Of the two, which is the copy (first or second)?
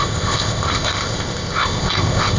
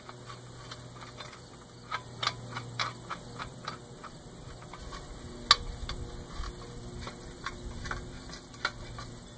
first